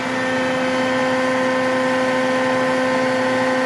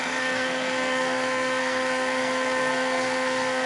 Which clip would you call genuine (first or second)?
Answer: first